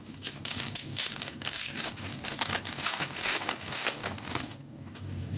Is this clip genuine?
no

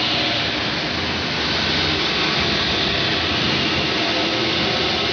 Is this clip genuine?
yes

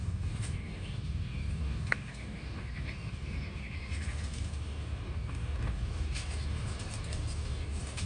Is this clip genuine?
no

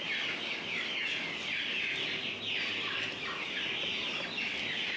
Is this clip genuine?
yes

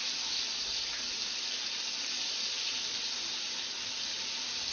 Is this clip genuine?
yes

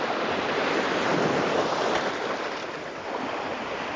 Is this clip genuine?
yes